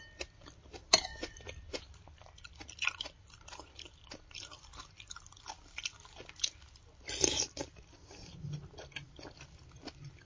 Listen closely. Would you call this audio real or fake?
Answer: real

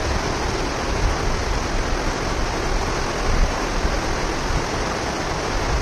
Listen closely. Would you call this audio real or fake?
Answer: real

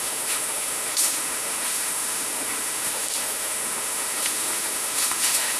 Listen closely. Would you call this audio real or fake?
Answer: fake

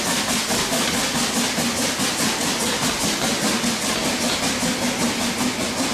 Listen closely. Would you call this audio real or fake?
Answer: real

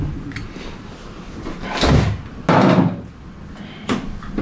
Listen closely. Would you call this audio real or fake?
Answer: real